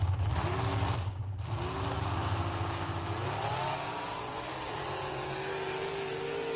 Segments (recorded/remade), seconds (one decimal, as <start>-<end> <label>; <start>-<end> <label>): 0.0-2.2 recorded; 2.2-2.9 remade; 2.9-3.7 recorded; 3.7-4.7 remade; 4.7-6.6 recorded